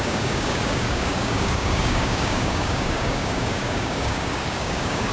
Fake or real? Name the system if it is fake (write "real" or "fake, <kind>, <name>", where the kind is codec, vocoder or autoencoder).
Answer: fake, codec, DAC